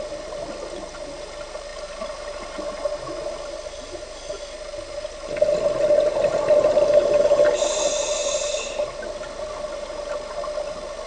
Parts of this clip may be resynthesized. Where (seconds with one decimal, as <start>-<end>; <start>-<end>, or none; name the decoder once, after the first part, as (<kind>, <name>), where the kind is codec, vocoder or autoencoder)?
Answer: none